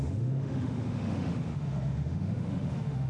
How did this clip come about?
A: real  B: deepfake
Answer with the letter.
B